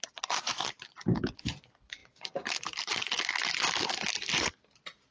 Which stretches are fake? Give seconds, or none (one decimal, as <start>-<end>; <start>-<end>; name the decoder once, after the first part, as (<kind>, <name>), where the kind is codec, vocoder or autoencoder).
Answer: 2.0-4.5 (vocoder, BigVGAN v2)